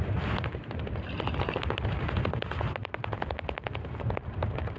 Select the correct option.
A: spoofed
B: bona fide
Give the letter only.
B